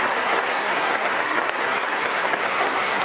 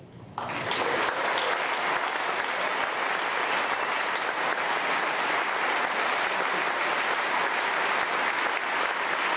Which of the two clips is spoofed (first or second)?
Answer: first